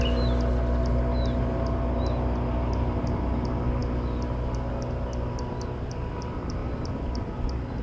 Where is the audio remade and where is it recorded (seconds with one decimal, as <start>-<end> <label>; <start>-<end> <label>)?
0.0-7.8 recorded